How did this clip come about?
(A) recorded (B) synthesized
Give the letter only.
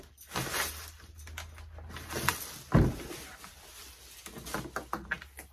A